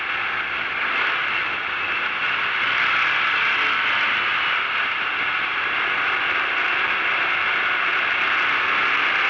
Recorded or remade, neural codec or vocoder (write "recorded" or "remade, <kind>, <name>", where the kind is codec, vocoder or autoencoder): recorded